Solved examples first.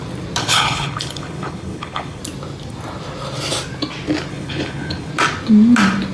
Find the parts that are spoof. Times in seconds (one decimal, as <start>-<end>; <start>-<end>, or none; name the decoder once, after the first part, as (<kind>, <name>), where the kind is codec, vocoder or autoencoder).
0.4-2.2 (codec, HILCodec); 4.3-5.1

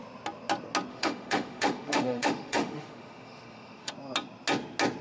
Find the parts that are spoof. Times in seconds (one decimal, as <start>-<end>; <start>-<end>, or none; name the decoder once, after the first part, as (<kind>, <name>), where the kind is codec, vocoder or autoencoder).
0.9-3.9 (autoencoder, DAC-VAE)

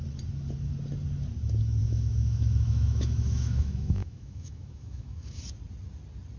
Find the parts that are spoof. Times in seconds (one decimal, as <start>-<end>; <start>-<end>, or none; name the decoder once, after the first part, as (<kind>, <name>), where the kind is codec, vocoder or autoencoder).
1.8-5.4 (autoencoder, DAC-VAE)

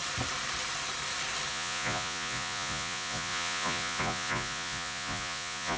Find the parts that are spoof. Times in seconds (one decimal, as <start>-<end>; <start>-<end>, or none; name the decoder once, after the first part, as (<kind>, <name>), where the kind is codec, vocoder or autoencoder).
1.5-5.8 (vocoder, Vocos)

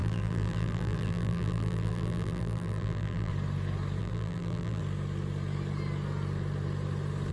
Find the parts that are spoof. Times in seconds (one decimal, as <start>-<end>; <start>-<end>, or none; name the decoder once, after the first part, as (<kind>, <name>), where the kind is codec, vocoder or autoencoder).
0.0-3.3 (vocoder, BigVGAN v2); 4.0-4.8

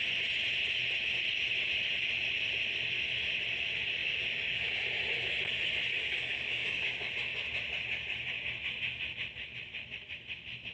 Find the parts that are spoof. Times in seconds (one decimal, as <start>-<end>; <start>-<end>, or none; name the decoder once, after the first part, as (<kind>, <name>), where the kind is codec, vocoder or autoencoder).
4.0-4.8 (codec, DAC); 6.0-7.1